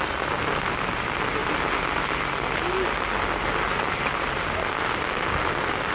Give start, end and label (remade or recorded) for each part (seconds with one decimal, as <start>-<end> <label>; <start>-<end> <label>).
0.0-5.9 recorded